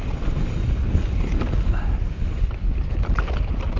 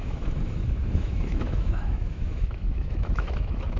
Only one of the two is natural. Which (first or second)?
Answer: first